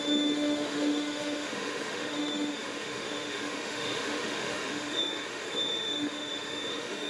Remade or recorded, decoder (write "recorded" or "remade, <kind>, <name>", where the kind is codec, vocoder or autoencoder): remade, autoencoder, DAC-VAE